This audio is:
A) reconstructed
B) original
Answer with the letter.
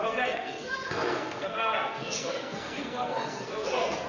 A